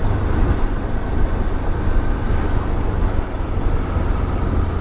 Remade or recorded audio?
recorded